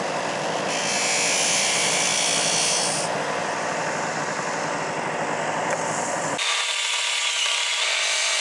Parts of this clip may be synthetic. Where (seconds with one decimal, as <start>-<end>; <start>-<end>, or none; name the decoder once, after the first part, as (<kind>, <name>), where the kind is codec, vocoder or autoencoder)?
none